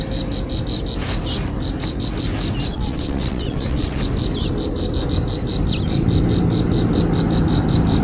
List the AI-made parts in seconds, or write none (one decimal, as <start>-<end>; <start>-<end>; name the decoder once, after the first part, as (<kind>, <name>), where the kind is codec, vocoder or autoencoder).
2.7-4.0 (vocoder, WaveNeXt)